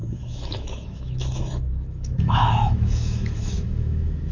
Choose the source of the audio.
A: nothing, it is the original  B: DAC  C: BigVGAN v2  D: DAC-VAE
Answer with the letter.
D